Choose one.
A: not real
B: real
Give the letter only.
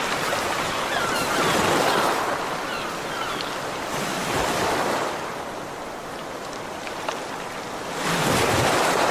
B